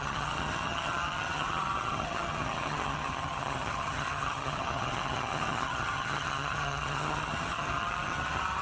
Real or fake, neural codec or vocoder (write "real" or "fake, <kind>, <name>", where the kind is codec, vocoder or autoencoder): fake, vocoder, HiFi-GAN